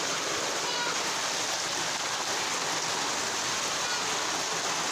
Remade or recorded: recorded